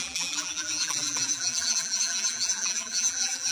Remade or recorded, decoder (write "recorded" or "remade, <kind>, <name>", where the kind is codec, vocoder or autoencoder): remade, vocoder, BigVGAN v2